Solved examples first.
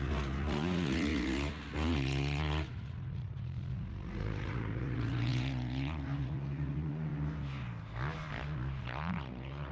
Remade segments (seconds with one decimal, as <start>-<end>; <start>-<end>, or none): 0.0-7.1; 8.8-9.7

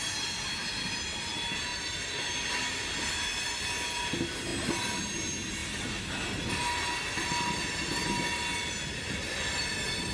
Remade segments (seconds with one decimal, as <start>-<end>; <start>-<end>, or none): none

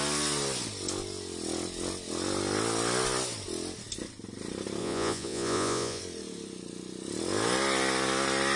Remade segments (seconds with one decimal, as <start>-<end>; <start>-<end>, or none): 4.8-6.0

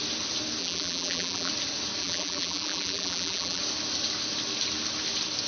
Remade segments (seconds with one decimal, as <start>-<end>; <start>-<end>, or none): 0.6-1.5; 2.0-3.6

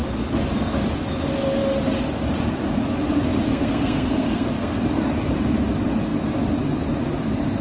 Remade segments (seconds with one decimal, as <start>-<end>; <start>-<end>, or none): 3.5-4.8

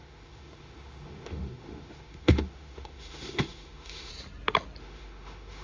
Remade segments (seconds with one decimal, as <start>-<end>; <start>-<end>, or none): 0.0-4.1; 4.8-5.6

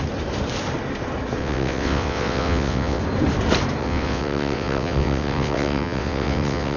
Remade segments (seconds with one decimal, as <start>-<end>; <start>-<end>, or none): 1.4-3.0; 3.8-6.8